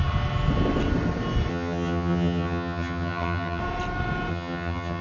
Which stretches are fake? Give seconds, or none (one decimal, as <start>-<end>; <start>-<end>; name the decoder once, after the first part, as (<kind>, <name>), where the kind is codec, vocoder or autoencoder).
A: 1.5-3.6 (vocoder, HiFi-GAN); 4.3-5.0